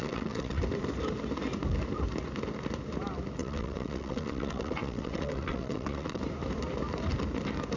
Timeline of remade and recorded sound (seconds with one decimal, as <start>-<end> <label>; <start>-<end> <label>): 0.0-0.6 remade; 0.6-3.4 recorded; 3.4-6.2 remade; 6.2-7.8 recorded